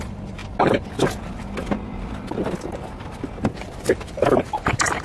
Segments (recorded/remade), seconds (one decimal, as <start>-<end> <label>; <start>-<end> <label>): 0.0-0.4 remade; 0.4-3.4 recorded; 3.4-5.0 remade